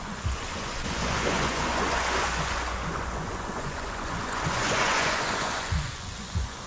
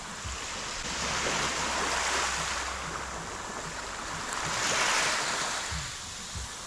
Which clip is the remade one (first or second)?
first